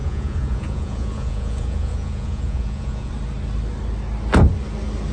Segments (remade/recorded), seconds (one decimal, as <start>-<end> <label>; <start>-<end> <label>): 0.0-3.1 remade; 3.1-5.1 recorded